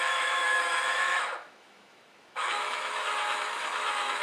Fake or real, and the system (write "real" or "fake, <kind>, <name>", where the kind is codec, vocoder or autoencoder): fake, autoencoder, DAC-VAE